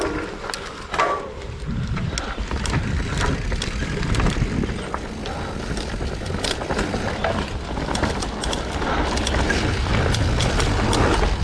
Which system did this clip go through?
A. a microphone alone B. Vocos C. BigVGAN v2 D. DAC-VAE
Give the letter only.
A